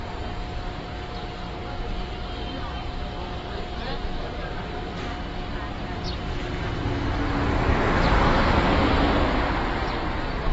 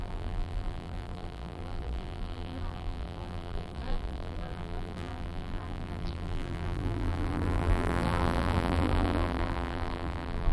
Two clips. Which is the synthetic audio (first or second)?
second